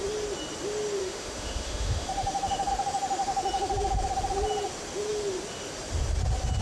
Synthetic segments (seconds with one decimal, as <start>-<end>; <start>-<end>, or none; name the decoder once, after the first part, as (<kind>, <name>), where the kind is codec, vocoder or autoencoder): 1.0-2.7 (autoencoder, DAC-VAE)